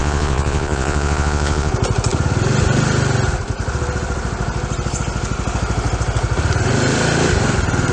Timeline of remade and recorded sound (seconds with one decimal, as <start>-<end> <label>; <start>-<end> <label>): 0.0-1.7 remade; 1.7-7.9 recorded